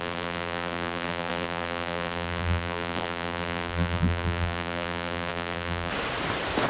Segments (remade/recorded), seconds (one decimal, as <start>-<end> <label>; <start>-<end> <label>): 0.0-5.9 remade; 5.9-6.7 recorded